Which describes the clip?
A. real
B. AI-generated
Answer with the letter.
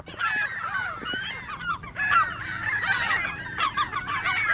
B